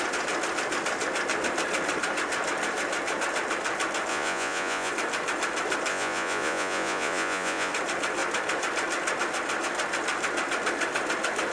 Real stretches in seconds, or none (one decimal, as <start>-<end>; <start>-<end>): 0.0-4.1; 4.9-5.9; 7.7-11.5